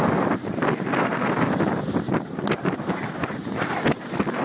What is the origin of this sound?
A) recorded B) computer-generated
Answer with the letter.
A